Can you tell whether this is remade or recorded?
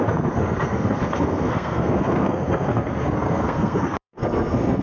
remade